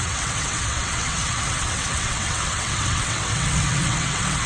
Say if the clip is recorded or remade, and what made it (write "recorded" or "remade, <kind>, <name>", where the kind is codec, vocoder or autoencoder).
remade, vocoder, WaveNeXt